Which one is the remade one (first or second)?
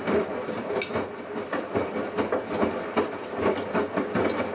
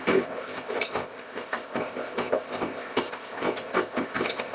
second